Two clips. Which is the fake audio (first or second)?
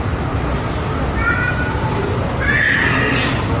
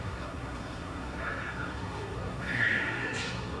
second